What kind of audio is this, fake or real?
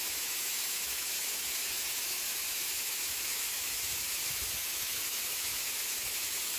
fake